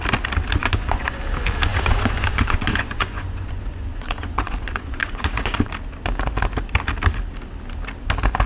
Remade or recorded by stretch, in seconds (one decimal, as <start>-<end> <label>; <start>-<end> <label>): 0.0-0.6 recorded; 0.6-1.2 remade; 1.2-1.7 recorded; 1.7-5.7 remade; 5.7-8.5 recorded